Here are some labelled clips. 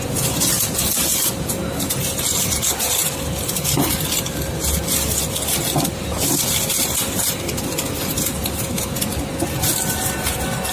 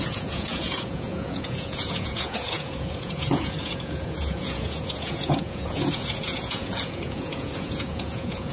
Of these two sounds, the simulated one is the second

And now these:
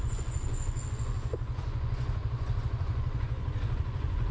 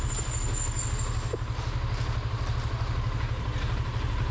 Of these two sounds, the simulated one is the first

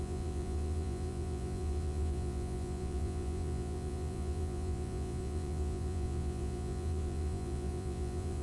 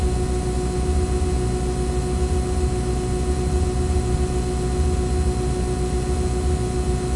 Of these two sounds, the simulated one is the first